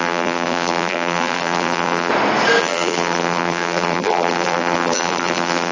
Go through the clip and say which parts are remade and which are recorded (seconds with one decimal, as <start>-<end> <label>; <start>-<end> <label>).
0.0-2.1 remade; 2.1-2.6 recorded; 2.6-5.7 remade